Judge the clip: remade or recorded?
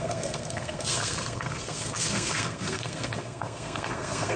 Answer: remade